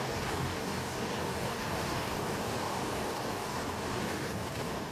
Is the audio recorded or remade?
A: remade